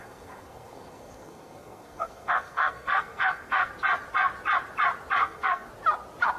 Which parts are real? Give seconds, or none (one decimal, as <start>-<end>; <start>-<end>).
3.7-5.2; 5.7-6.4